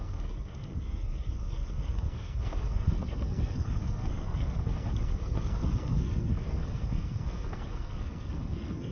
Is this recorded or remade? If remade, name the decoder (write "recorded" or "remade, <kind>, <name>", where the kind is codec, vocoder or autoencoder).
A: remade, codec, SNAC